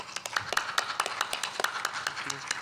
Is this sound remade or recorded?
recorded